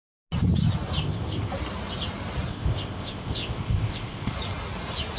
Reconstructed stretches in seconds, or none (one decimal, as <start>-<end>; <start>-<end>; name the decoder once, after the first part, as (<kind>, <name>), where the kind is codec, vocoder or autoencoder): 1.0-1.5 (codec, ZipCodec); 2.5-4.3